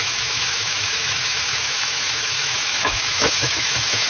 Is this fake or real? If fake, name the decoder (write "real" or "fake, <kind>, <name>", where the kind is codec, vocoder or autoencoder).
fake, autoencoder, DAC-VAE